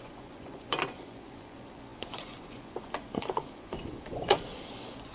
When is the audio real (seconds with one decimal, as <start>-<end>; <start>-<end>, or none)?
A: none